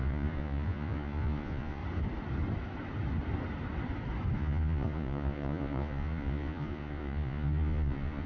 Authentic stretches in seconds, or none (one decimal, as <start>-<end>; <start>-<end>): 1.8-4.4